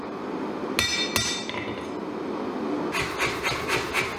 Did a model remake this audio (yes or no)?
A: no